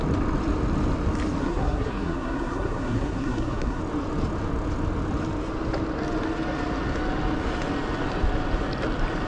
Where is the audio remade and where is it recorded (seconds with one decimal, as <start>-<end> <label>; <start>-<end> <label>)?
0.0-1.4 recorded; 1.4-3.8 remade; 3.8-9.3 recorded